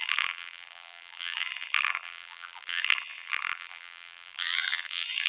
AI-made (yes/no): yes